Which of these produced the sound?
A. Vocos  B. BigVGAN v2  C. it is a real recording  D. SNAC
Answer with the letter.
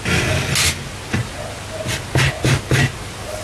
C